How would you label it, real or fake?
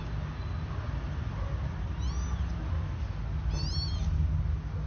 real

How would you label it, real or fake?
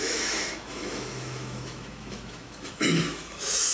fake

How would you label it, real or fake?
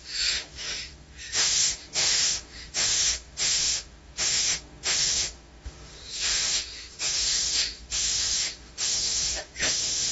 fake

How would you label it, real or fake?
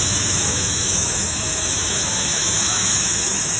fake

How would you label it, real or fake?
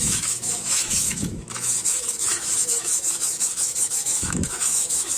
fake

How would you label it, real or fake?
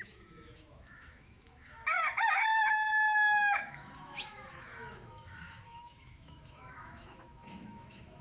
fake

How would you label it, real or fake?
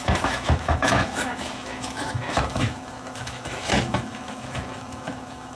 fake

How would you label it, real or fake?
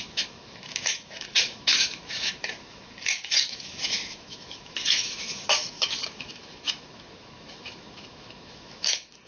fake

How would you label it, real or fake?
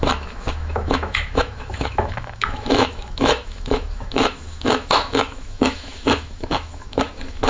fake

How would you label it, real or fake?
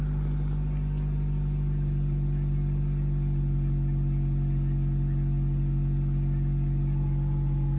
real